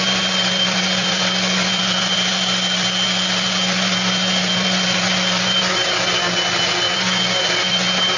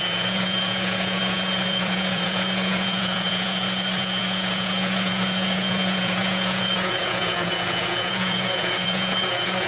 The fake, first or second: second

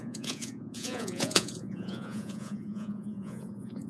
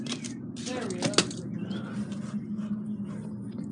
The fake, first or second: first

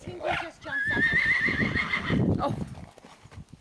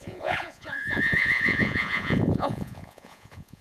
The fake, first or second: second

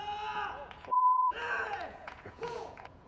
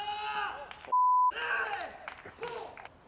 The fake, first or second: first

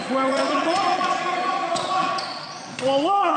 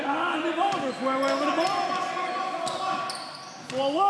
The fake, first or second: first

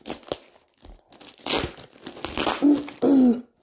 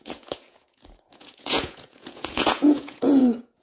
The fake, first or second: second